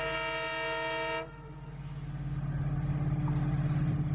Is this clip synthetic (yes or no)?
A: no